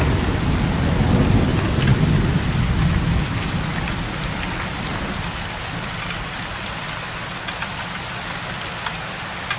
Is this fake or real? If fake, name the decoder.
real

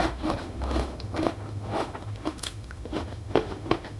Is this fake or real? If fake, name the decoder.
fake, autoencoder, DAC-VAE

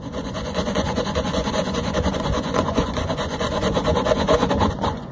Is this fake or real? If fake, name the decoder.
fake, vocoder, Vocos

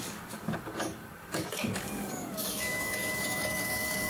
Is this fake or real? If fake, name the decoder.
fake, codec, DAC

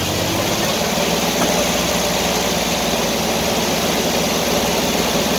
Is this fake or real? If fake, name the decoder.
real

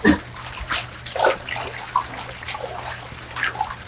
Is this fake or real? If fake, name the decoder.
real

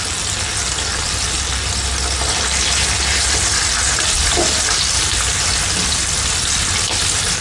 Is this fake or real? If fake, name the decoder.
real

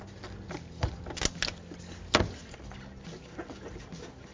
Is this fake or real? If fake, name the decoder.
real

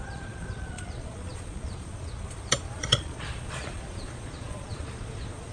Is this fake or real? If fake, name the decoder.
fake, vocoder, Vocos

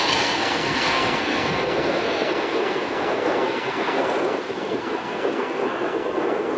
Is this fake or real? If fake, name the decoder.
fake, codec, SNAC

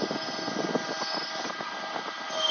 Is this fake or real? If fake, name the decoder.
real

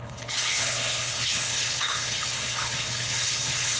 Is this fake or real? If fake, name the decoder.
fake, codec, HILCodec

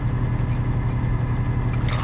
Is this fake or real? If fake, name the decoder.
real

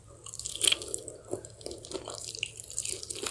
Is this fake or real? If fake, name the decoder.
real